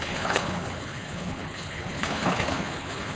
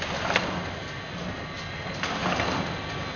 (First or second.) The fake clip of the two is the first